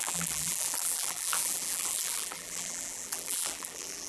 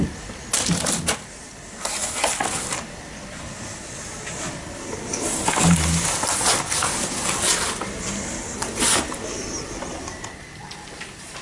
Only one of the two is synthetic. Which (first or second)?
first